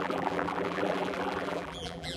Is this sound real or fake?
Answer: fake